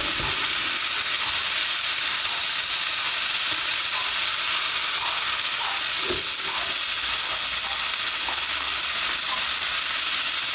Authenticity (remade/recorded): recorded